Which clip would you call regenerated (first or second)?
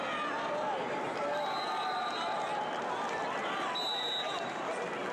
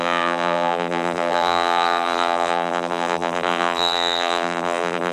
second